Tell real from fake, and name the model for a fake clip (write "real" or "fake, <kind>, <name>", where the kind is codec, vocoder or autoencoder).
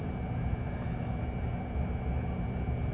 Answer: real